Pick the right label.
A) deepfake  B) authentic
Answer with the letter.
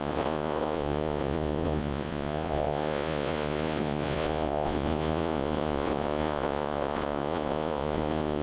A